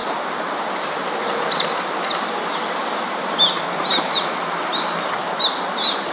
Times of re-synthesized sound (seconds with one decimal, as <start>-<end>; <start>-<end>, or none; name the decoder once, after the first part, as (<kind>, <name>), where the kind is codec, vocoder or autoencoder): 0.0-1.1 (vocoder, BigVGAN v2)